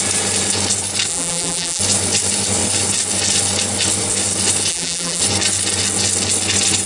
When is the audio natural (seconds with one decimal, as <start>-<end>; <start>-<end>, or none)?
0.0-1.1; 1.8-4.7; 5.2-6.9